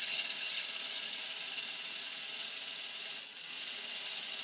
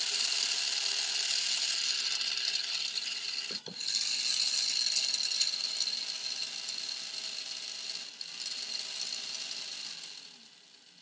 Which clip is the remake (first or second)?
first